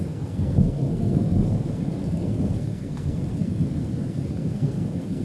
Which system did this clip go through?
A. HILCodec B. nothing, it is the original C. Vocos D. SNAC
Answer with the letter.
D